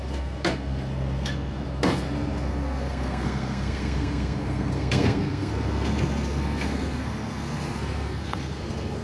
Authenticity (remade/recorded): remade